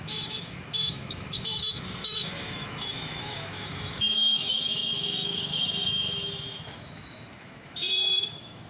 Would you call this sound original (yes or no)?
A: no